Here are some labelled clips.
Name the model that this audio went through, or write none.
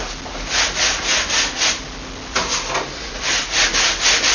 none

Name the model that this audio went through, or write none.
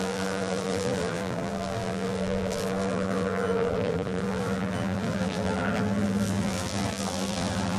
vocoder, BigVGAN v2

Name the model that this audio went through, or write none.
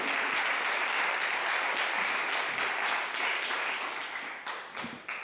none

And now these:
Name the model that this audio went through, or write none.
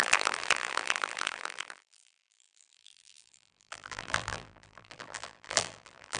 vocoder, BigVGAN v2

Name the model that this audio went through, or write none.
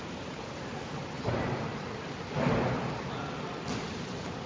vocoder, BigVGAN v2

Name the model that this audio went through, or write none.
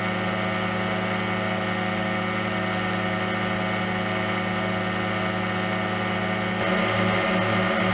none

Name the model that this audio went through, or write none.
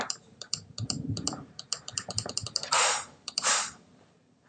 vocoder, BigVGAN v2